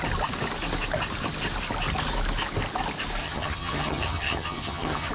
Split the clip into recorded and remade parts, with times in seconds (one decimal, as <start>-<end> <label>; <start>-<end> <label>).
0.0-3.2 recorded; 3.2-5.1 remade